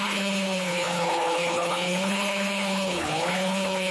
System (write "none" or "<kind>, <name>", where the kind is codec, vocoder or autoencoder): codec, HILCodec